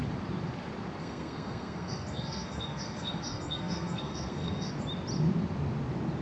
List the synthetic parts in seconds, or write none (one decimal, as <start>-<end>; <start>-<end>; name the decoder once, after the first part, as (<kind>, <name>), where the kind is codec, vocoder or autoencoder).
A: 1.0-4.7 (codec, SNAC)